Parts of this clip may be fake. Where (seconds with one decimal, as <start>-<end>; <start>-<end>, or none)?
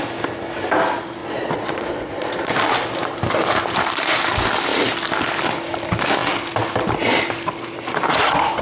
1.2-2.6